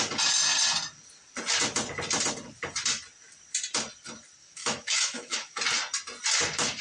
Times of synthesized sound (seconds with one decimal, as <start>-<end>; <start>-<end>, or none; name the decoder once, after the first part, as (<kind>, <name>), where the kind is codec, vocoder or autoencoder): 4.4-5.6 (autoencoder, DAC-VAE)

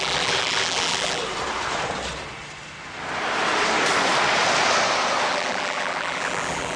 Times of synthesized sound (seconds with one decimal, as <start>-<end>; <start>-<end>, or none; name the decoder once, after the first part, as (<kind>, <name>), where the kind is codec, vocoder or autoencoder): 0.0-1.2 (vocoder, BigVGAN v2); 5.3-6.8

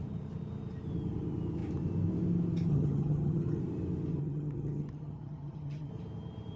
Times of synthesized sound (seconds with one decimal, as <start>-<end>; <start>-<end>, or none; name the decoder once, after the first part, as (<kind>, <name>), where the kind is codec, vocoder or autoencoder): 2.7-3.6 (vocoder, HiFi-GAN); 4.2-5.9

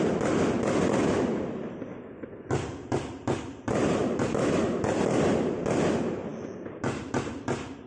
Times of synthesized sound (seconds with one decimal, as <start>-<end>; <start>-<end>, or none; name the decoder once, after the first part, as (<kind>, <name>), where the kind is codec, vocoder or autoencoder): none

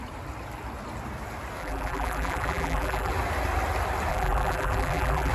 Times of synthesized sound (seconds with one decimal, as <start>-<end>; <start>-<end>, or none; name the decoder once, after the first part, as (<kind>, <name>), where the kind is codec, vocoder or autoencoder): 1.6-3.1 (vocoder, BigVGAN v2); 4.1-5.3